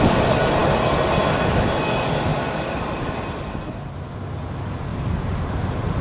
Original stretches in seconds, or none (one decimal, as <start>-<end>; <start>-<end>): 0.0-2.3; 2.9-4.9